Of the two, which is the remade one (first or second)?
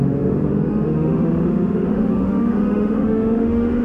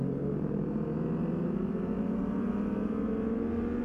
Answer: first